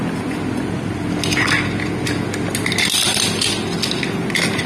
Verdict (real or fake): real